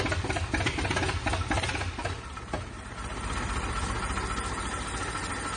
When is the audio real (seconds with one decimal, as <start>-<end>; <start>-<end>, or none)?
0.0-5.6

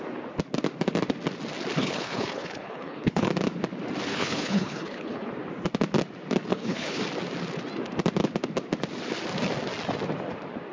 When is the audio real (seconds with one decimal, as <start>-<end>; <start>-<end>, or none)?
0.0-1.8; 3.3-4.1; 5.3-6.5; 7.0-10.7

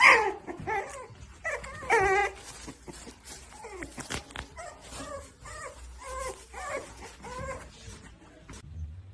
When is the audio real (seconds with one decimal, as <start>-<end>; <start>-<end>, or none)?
0.0-9.1

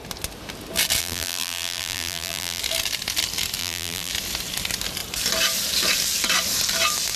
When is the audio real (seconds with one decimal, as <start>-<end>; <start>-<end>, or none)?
0.0-1.0; 2.6-3.6; 4.1-7.2

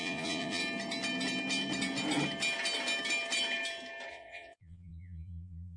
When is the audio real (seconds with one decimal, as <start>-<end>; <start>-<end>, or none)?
0.6-4.1

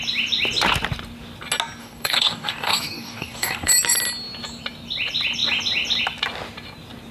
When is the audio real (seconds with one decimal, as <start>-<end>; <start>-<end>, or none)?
0.0-1.8; 3.7-7.1

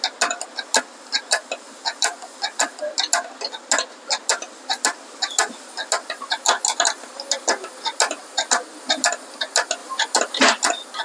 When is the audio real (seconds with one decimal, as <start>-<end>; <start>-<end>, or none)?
0.0-11.0